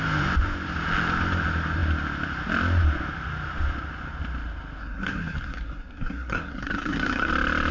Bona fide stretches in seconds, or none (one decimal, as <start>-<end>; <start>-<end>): 0.0-4.8; 7.3-7.7